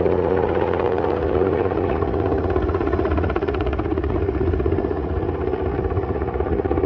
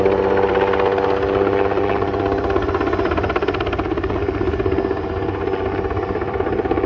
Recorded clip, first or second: second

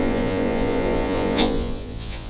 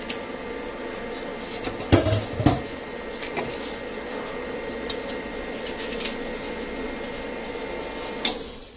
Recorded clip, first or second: second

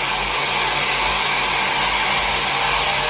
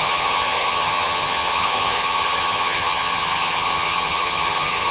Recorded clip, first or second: first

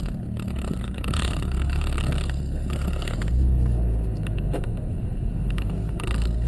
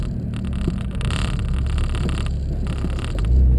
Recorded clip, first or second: second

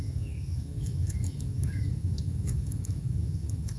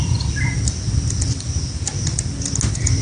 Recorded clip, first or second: second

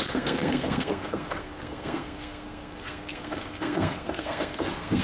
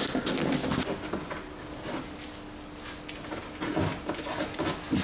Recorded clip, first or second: second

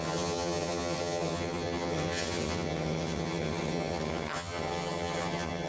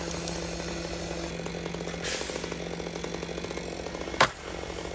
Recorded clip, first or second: second